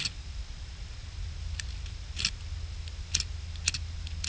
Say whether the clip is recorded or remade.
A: recorded